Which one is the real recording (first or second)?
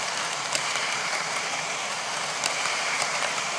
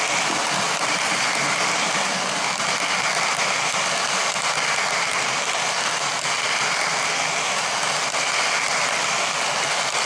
second